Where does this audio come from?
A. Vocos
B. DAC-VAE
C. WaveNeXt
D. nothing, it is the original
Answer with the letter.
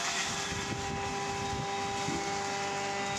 D